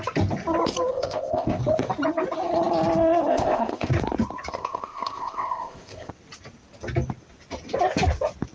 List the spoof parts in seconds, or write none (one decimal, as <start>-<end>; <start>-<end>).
0.9-1.6; 3.3-3.9; 4.5-6.1